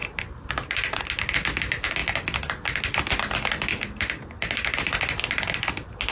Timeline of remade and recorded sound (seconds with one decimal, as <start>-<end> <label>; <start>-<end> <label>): 0.0-1.0 remade; 1.0-3.7 recorded; 3.7-5.2 remade; 5.2-6.1 recorded